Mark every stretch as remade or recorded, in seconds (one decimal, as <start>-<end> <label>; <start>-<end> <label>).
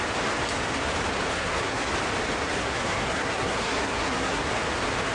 0.0-1.3 recorded; 1.3-1.9 remade; 1.9-2.4 recorded; 2.4-4.5 remade; 4.5-5.1 recorded